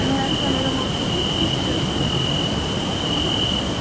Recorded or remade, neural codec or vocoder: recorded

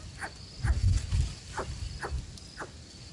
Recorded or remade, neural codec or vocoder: recorded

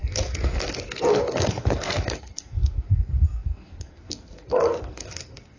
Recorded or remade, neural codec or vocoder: remade, codec, SNAC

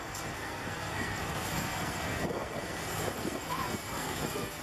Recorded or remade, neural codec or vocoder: remade, codec, SNAC